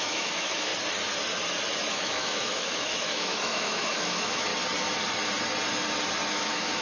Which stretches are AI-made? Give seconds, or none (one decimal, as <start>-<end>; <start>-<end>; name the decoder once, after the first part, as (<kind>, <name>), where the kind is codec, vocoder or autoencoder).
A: 0.0-0.7 (autoencoder, DAC-VAE); 1.9-4.5; 6.3-6.8